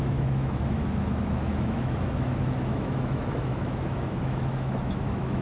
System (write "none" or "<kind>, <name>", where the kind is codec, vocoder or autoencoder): autoencoder, DAC-VAE